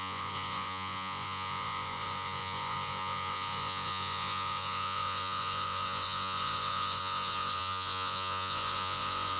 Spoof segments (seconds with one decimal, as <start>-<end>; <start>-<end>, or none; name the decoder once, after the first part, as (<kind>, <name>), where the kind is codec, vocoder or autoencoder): 0.0-9.4 (vocoder, Vocos)